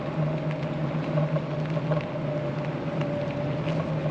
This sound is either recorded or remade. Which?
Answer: recorded